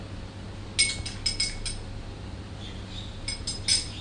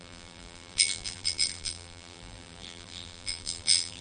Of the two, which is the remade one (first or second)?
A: second